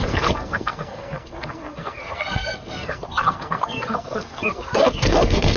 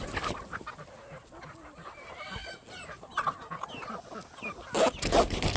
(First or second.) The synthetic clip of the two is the first